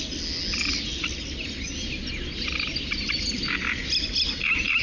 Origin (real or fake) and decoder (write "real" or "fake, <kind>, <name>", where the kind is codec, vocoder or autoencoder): real